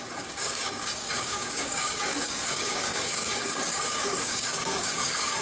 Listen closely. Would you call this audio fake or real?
fake